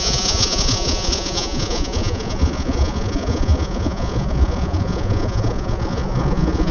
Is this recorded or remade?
remade